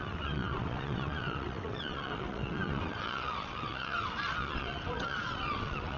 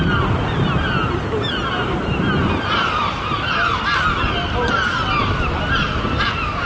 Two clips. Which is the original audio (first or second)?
second